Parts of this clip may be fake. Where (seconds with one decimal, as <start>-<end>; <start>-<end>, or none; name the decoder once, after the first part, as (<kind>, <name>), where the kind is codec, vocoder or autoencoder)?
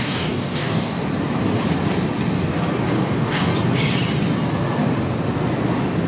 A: 0.0-1.0 (codec, DAC); 2.9-3.5